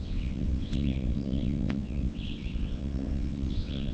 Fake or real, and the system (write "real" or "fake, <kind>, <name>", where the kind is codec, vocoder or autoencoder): fake, vocoder, WaveNeXt